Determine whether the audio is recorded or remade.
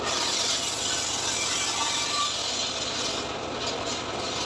recorded